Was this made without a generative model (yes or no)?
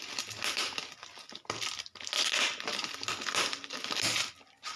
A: yes